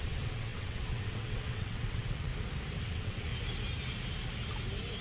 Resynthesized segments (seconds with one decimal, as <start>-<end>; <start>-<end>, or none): 0.0-2.3; 2.8-3.3